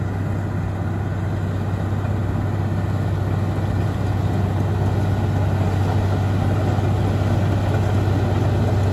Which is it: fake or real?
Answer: real